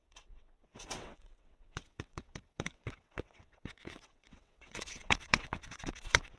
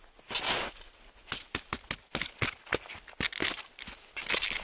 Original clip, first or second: second